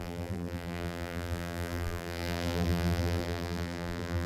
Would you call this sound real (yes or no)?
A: no